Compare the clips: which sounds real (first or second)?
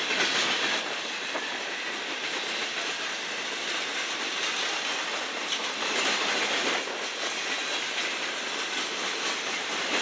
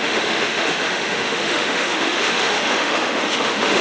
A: first